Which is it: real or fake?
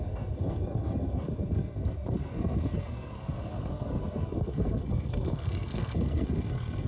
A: fake